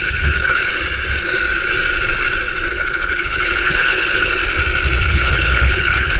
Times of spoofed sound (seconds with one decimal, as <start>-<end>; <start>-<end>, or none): 0.0-0.7; 2.7-4.4; 5.1-6.2